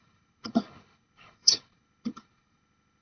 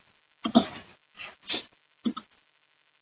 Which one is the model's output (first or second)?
first